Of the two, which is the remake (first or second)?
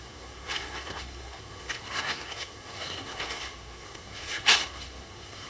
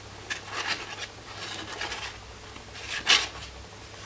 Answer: first